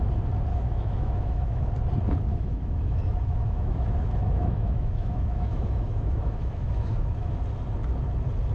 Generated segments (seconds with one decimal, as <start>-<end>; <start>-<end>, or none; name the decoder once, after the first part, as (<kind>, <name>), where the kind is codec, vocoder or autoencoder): 0.5-1.7 (autoencoder, DAC-VAE); 2.3-7.4